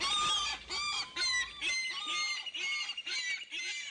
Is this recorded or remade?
recorded